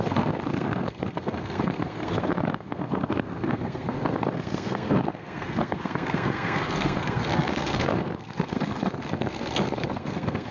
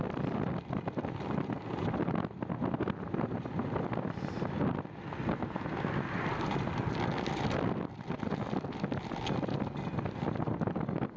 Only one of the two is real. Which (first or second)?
second